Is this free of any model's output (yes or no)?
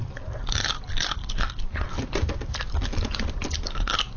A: yes